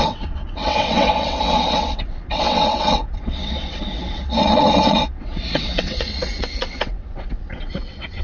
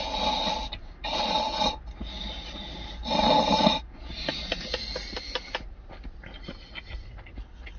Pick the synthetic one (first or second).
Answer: first